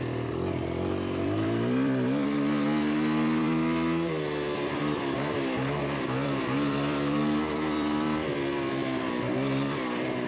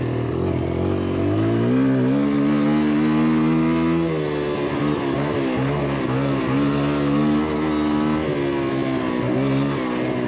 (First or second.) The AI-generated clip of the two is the first